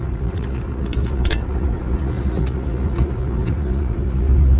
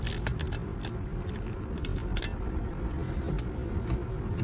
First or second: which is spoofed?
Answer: first